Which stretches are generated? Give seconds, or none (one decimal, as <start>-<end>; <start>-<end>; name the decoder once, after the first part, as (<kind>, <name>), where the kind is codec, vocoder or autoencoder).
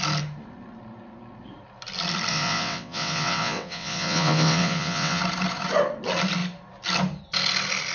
2.3-5.2 (vocoder, WaveNeXt)